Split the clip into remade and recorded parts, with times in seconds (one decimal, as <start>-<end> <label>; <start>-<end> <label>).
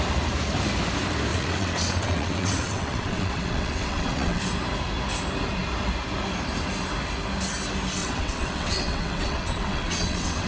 0.0-1.3 recorded; 1.3-4.4 remade; 4.4-8.0 recorded; 8.0-10.5 remade